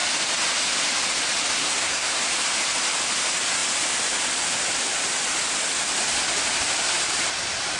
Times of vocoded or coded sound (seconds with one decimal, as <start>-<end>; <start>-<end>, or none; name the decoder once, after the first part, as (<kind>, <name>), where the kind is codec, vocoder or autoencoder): 1.6-2.2 (codec, SNAC)